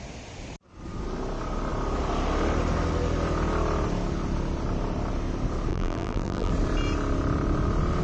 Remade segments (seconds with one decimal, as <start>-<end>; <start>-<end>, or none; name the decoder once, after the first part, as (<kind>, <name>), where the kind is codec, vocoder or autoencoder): 5.7-6.5 (vocoder, BigVGAN v2)